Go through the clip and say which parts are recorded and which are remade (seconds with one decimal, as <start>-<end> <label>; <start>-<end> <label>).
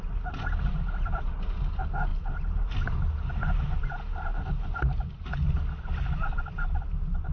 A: 0.0-7.3 recorded